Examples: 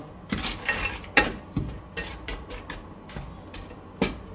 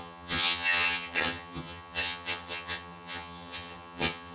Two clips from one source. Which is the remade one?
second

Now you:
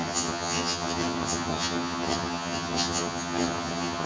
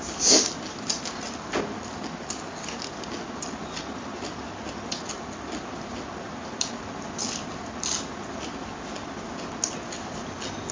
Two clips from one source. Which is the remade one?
first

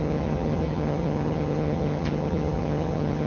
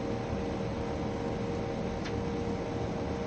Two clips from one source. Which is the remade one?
first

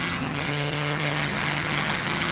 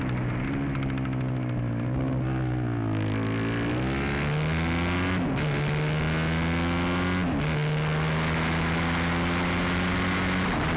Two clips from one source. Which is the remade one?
first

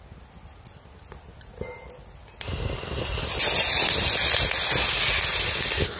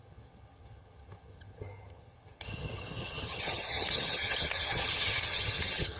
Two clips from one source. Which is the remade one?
second